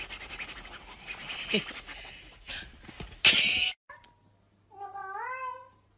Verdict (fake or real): real